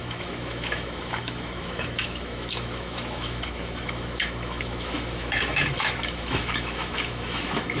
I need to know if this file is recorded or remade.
remade